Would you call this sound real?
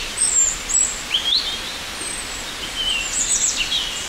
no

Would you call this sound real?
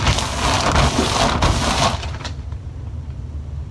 yes